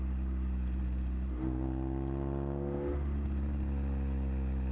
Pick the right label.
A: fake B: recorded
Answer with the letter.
B